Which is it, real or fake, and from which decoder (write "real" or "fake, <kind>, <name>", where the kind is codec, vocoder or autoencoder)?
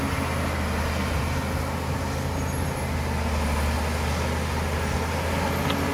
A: real